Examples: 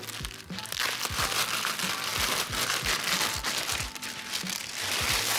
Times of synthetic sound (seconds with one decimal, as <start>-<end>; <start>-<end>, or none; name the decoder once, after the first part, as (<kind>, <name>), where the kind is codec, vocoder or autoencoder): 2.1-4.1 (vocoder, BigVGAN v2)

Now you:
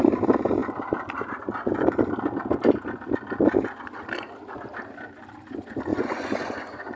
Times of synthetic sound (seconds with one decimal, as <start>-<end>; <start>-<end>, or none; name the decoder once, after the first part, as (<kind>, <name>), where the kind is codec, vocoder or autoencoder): 5.9-7.0 (vocoder, Vocos)

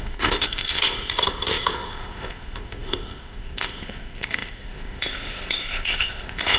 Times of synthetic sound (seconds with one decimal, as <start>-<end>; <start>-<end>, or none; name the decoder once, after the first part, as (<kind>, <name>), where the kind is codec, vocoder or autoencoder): 0.0-6.6 (codec, ZipCodec)

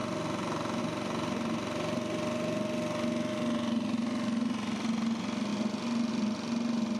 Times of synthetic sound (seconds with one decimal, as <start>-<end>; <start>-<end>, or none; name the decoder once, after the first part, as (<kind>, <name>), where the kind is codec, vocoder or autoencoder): none

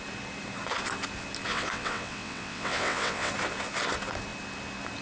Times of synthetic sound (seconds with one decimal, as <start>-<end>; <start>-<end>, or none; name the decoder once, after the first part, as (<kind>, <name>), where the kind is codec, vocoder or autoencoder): 1.5-3.3 (vocoder, WaveNeXt)

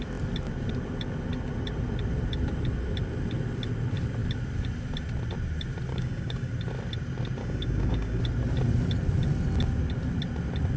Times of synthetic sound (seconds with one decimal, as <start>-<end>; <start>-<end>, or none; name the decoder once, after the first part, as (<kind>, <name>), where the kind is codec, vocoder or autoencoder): 5.9-6.5 (codec, DAC); 7.4-8.2